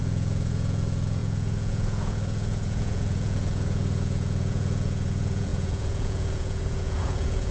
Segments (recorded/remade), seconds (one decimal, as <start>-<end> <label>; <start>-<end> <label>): 0.0-7.5 remade